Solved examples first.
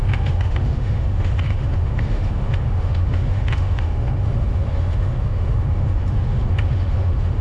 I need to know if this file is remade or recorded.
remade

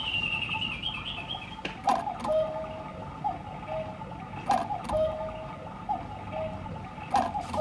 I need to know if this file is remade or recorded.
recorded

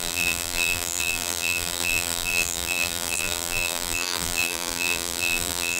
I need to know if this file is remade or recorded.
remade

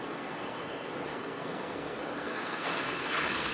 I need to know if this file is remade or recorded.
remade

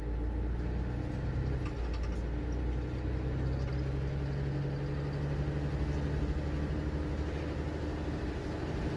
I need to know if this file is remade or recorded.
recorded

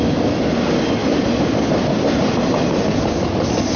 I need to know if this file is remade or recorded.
recorded